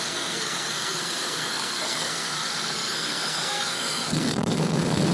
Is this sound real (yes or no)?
no